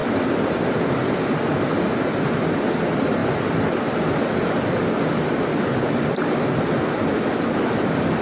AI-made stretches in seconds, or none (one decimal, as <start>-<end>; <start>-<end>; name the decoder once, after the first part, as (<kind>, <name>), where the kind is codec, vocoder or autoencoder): none